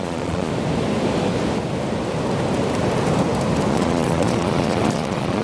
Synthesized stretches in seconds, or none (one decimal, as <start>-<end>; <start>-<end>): 0.0-0.5; 3.7-5.4